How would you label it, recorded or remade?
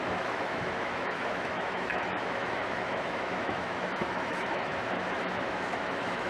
remade